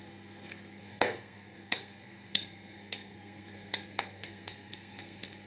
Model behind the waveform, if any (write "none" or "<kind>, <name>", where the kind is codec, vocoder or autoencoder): codec, SNAC